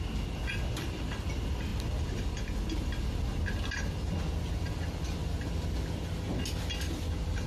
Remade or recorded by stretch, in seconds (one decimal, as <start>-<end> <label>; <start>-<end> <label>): 0.0-7.5 recorded